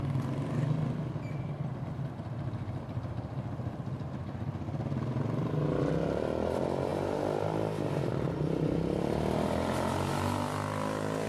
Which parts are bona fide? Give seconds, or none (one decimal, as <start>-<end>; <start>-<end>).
0.0-11.3